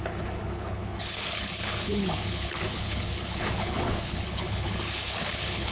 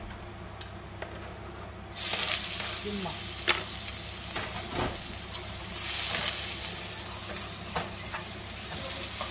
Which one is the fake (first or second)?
first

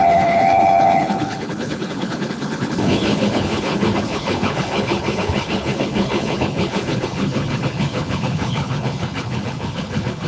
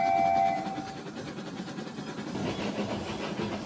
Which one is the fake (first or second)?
first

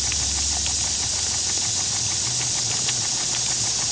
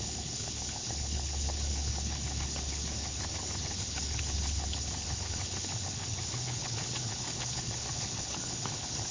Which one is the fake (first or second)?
second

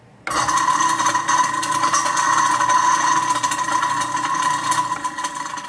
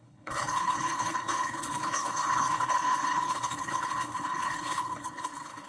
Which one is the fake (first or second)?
second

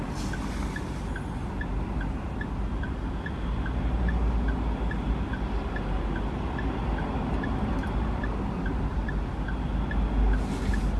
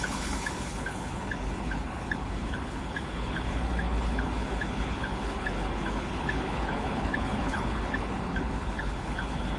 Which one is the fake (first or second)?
second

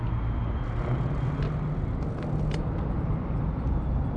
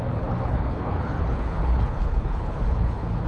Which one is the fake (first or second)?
second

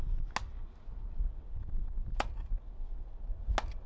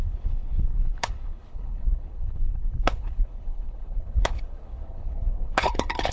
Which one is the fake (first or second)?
second